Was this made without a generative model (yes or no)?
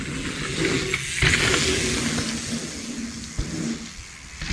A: yes